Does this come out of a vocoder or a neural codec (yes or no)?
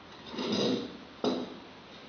no